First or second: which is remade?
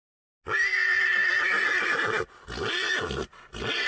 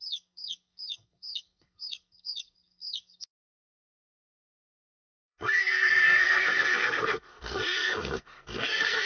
second